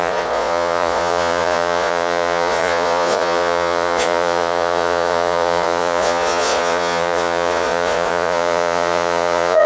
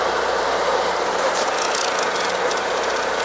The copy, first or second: first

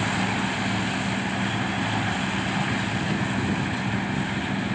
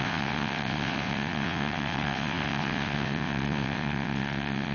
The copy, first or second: second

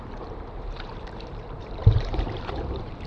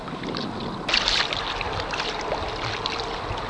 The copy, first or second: first